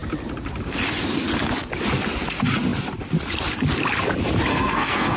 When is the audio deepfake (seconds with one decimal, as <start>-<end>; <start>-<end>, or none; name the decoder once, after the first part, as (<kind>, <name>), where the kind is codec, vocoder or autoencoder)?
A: 4.5-5.2 (codec, SNAC)